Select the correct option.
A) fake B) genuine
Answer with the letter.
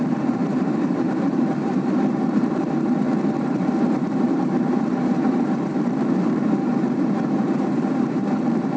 A